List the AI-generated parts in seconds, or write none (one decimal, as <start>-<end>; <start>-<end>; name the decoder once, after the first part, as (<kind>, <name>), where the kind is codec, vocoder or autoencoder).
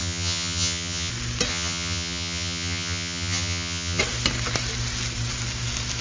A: 0.0-1.1 (vocoder, HiFi-GAN); 1.5-4.0